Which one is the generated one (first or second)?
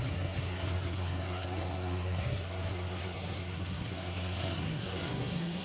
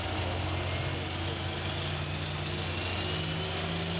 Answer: first